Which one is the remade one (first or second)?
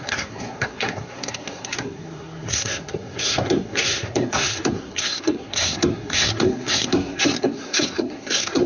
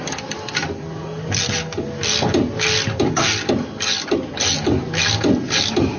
first